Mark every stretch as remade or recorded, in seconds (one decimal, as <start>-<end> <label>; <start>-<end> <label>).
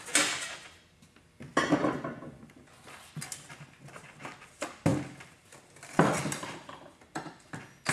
0.0-7.9 recorded